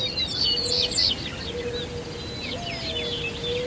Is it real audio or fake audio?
real